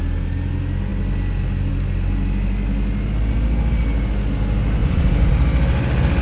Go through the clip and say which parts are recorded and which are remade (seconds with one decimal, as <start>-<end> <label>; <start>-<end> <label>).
0.0-4.8 recorded; 4.8-5.3 remade; 5.3-6.2 recorded